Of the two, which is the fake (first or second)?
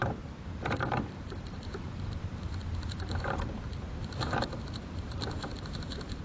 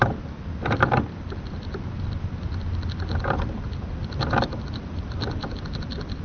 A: first